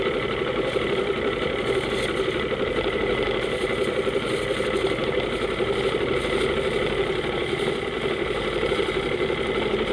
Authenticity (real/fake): real